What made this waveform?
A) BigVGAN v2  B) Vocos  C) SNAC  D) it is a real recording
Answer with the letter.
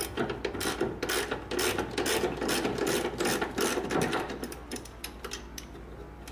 D